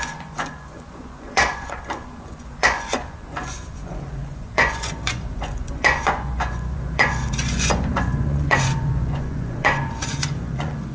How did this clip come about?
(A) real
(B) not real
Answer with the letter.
B